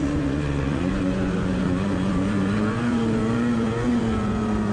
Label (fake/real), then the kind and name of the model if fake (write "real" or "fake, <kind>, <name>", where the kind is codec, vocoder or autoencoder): fake, vocoder, Vocos